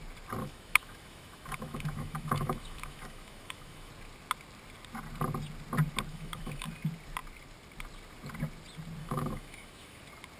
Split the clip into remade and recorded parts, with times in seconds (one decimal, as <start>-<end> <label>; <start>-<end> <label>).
0.0-0.4 recorded; 0.4-3.9 remade; 3.9-6.1 recorded; 6.1-6.7 remade; 6.7-9.0 recorded; 9.0-10.0 remade; 10.0-10.4 recorded